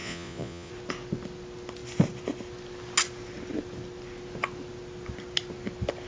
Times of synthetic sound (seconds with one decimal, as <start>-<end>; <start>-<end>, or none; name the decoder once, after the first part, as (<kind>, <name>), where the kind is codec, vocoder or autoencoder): 0.0-0.7 (vocoder, Vocos)

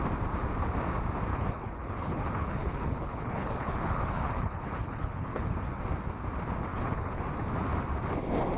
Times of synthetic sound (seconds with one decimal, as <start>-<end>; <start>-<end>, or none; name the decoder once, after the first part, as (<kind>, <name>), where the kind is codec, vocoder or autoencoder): 1.3-5.8 (codec, HILCodec); 6.7-7.2

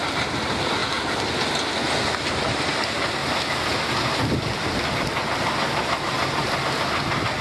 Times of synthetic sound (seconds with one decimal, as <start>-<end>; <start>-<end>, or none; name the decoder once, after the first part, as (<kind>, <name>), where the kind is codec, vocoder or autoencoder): none

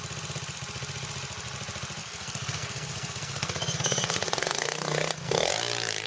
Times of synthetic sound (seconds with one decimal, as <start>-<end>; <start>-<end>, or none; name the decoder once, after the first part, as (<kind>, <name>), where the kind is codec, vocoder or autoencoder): 2.0-5.5 (codec, SNAC)